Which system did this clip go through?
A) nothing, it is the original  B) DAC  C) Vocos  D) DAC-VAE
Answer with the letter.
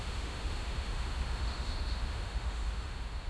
D